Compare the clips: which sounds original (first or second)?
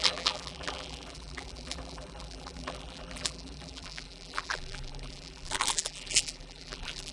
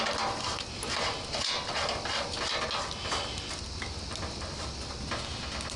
second